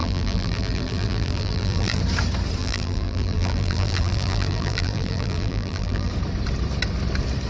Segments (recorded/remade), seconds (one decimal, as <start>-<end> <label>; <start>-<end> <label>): 0.0-2.0 remade; 2.0-2.6 recorded; 2.6-6.1 remade; 6.1-7.5 recorded